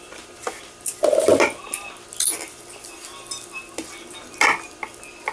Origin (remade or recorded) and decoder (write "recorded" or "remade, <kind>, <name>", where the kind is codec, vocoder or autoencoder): recorded